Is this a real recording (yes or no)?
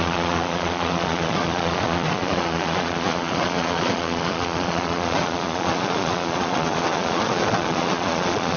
no